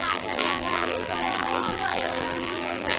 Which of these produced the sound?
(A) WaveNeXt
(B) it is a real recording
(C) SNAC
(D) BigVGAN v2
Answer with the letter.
D